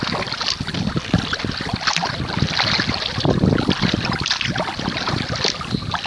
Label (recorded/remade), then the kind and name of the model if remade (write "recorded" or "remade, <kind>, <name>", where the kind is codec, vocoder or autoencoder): recorded